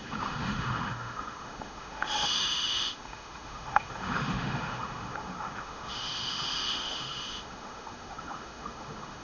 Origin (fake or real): fake